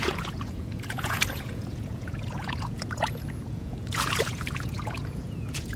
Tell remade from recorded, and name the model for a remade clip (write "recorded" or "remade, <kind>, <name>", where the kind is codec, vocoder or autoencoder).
remade, vocoder, Vocos